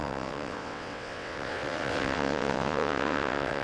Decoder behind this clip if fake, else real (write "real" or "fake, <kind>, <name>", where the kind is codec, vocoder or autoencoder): fake, vocoder, WaveNeXt